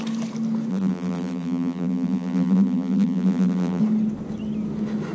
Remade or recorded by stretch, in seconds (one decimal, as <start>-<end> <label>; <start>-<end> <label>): 0.0-0.7 recorded; 0.7-3.8 remade; 3.8-5.1 recorded

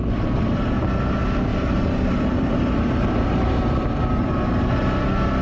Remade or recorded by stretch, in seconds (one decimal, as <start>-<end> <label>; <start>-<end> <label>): 0.0-0.8 remade; 0.8-1.5 recorded; 1.5-4.7 remade; 4.7-5.4 recorded